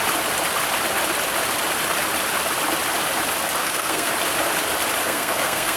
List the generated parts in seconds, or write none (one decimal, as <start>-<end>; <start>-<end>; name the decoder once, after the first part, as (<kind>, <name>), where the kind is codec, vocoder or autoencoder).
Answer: 3.6-4.1 (codec, SNAC); 5.0-5.8